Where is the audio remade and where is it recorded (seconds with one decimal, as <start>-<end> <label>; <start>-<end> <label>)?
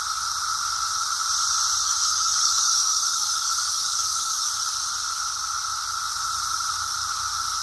0.0-1.8 recorded; 1.8-4.5 remade; 4.5-7.6 recorded